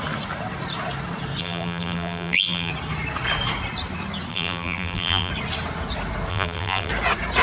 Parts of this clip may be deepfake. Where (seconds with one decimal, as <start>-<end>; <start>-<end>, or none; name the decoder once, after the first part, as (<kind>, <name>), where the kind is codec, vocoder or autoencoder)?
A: 1.4-2.7 (vocoder, BigVGAN v2); 4.3-5.3; 6.3-6.9